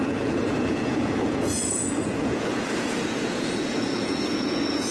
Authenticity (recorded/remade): remade